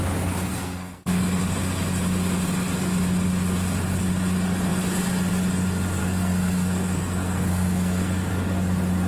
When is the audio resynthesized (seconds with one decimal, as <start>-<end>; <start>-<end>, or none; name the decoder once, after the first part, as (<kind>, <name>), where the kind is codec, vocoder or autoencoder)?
0.5-1.4 (codec, SNAC); 6.0-8.3